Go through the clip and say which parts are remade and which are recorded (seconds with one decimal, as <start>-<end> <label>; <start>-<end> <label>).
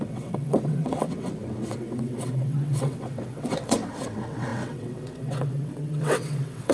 0.0-6.7 remade